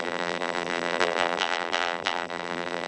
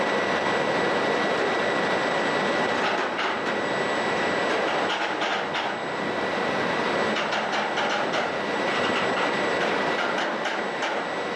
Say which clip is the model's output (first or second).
first